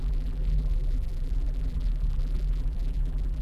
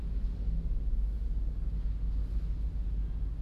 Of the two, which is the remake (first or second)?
first